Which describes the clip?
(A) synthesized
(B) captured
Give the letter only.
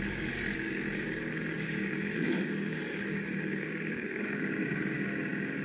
A